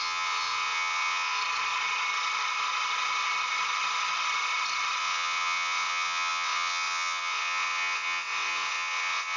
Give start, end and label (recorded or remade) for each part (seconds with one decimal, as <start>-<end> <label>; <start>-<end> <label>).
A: 0.0-1.4 remade; 1.4-5.0 recorded; 5.0-9.4 remade